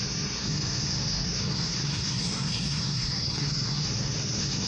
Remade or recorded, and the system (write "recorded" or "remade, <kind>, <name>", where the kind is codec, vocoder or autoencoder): remade, codec, SNAC